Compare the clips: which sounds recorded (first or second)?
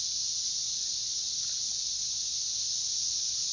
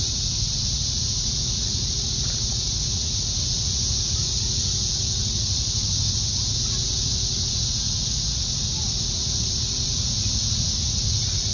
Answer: first